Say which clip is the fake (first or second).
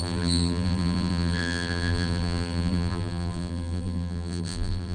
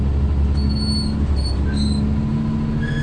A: first